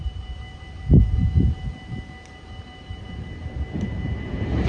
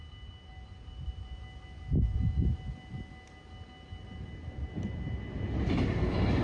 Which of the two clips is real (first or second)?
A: second